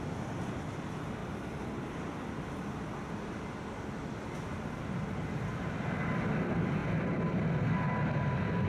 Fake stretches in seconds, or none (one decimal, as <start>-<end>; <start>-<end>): none